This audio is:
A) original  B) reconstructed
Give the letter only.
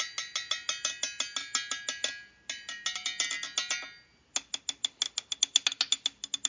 A